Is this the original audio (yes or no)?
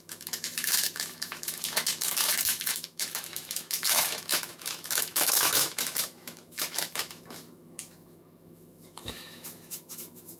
no